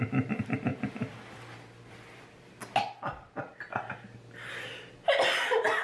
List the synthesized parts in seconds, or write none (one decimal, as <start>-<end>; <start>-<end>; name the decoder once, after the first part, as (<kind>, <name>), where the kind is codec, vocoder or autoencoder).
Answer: none